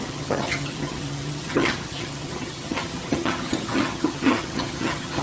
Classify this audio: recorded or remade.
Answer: remade